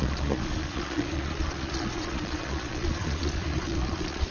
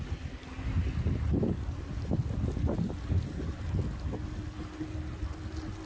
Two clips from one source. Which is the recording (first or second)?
second